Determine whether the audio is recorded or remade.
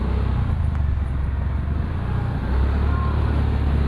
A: recorded